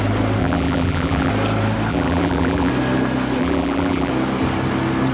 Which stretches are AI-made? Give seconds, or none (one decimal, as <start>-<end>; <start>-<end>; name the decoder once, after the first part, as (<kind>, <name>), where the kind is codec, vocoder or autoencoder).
0.4-1.3 (vocoder, BigVGAN v2); 1.9-2.7; 3.4-4.1